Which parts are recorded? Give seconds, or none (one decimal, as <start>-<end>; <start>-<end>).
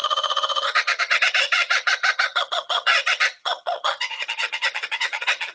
none